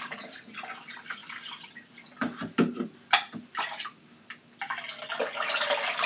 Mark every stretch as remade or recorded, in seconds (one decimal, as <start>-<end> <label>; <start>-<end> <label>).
0.0-6.1 recorded